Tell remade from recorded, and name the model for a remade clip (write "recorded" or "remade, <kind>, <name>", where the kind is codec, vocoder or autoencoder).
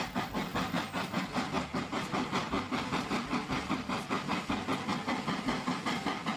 recorded